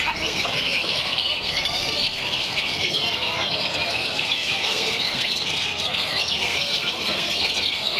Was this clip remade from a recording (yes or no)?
yes